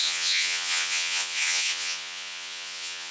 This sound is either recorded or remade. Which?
remade